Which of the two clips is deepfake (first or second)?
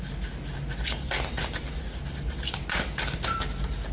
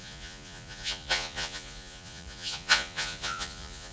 second